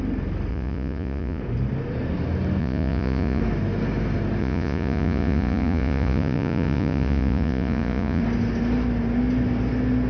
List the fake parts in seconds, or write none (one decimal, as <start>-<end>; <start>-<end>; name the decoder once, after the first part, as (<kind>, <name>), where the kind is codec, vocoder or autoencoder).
0.5-1.4 (vocoder, Vocos); 2.6-3.4; 4.4-8.2

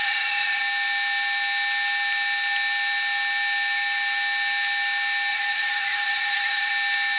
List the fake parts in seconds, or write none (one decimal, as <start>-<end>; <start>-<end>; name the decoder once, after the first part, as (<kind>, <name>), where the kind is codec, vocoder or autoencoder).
0.0-0.6 (vocoder, Vocos); 5.3-6.7

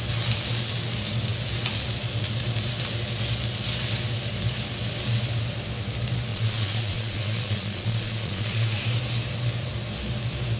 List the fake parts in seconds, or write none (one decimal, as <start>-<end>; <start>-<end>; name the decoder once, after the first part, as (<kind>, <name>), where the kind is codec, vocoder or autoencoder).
6.3-8.8 (vocoder, Vocos)